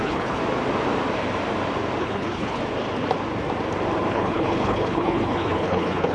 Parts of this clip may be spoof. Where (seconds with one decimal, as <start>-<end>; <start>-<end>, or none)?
0.0-0.4; 2.0-2.6; 4.1-6.1